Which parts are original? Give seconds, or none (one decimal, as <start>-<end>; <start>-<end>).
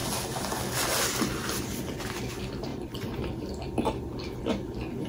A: 0.0-5.1